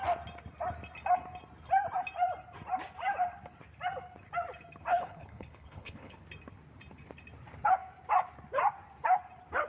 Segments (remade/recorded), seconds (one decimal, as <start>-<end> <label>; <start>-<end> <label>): 0.0-4.9 recorded; 4.9-6.2 remade; 6.2-9.7 recorded